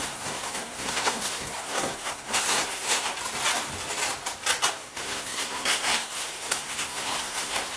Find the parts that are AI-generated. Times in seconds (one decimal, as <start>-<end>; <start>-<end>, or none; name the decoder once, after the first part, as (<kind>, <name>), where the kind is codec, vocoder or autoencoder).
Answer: 0.0-3.1 (codec, SNAC); 4.7-7.8